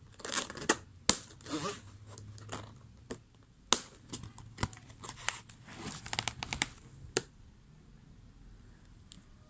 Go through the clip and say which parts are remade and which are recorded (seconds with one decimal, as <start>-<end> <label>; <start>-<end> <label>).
0.0-9.5 recorded